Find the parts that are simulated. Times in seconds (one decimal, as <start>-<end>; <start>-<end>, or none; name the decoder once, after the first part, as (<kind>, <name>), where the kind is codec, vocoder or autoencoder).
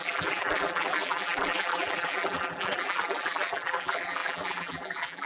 0.0-5.3 (vocoder, BigVGAN v2)